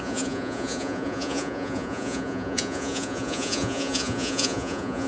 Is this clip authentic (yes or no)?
no